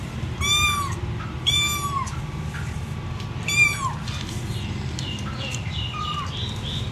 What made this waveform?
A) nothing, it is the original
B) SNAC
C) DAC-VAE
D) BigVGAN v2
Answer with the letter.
A